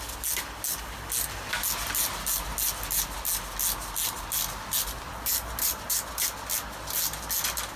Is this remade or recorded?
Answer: recorded